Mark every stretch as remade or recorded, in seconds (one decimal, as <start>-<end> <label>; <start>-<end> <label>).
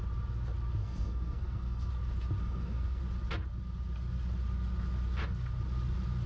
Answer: 0.0-0.8 recorded; 0.8-1.9 remade; 1.9-2.4 recorded; 2.4-3.0 remade; 3.0-6.3 recorded